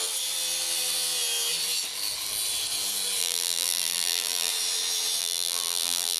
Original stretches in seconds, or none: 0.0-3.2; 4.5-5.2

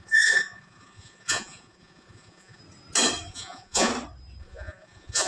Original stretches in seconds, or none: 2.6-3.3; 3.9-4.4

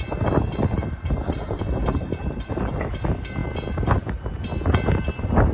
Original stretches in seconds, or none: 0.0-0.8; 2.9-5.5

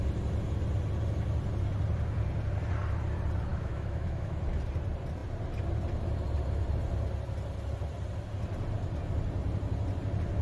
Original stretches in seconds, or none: 0.0-3.5; 4.4-10.4

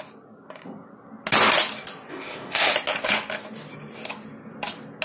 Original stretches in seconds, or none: 0.0-2.1; 2.7-5.0